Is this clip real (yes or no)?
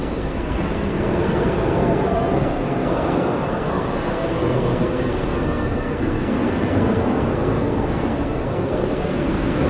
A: no